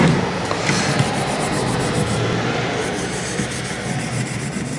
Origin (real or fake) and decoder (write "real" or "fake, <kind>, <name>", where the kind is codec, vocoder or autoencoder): real